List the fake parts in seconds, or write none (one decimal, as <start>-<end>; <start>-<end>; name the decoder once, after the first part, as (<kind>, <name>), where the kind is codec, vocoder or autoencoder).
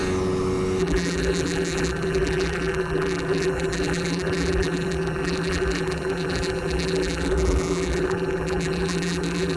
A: 0.8-9.6 (vocoder, BigVGAN v2)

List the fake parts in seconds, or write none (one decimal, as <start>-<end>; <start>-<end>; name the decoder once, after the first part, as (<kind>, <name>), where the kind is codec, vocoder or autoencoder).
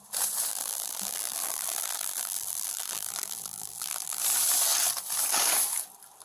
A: 0.5-4.2 (vocoder, BigVGAN v2)